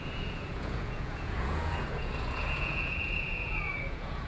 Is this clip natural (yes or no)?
no